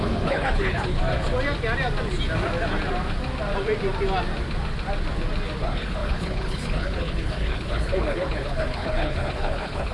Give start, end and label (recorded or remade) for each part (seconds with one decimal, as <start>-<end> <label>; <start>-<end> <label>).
0.0-1.0 remade; 1.0-5.6 recorded; 5.6-9.9 remade